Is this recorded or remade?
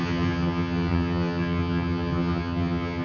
remade